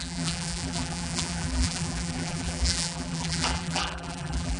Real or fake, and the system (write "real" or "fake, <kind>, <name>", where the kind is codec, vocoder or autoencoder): fake, vocoder, BigVGAN v2